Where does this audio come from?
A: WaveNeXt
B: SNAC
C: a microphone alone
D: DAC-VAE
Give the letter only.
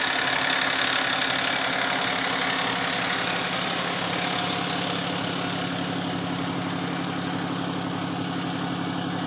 C